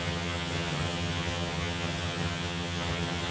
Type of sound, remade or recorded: remade